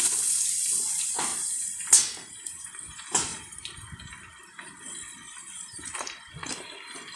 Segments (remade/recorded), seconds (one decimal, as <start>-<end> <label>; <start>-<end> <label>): 0.0-1.3 remade; 1.3-2.7 recorded; 2.7-7.2 remade